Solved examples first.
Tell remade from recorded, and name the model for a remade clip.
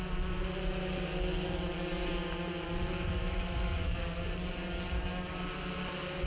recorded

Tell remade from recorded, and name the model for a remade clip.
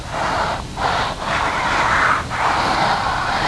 recorded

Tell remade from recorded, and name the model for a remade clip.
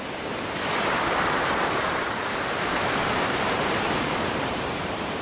remade, vocoder, BigVGAN v2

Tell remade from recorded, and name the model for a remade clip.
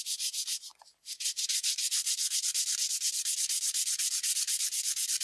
recorded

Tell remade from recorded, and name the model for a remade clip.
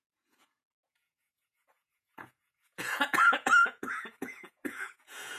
remade, vocoder, Vocos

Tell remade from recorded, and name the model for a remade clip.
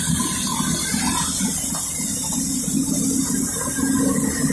recorded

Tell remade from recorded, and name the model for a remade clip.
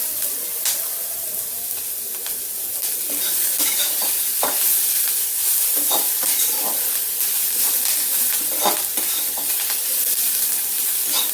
recorded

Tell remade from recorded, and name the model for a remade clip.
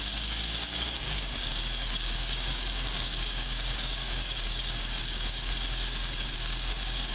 remade, codec, DAC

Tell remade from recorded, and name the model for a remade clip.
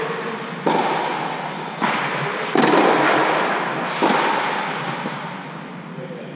recorded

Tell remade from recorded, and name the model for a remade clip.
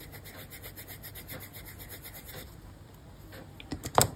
recorded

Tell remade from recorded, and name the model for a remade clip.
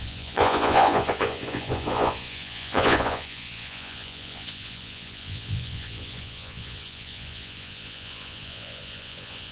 remade, vocoder, Vocos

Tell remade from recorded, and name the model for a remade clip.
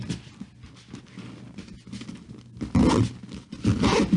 recorded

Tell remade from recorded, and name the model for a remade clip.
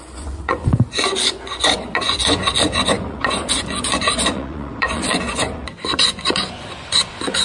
remade, vocoder, Vocos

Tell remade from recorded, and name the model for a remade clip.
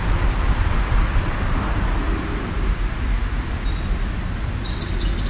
recorded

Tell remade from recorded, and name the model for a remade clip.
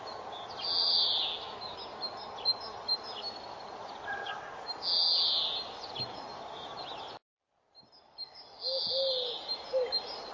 recorded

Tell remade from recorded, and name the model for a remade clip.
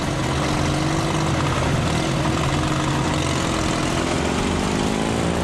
recorded